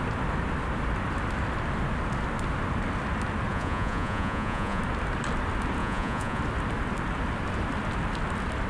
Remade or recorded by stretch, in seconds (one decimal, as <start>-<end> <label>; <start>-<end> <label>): 0.0-3.5 recorded; 3.5-4.8 remade; 4.8-5.8 recorded; 5.8-6.4 remade; 6.4-8.7 recorded